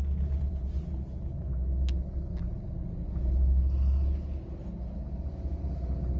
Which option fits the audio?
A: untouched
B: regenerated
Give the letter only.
A